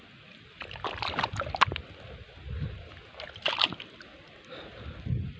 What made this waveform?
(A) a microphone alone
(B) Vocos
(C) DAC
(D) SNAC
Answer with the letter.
A